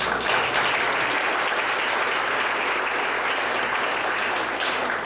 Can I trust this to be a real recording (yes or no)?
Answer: yes